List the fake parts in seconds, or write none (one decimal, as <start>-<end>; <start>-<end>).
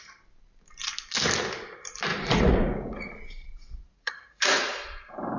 2.1-5.4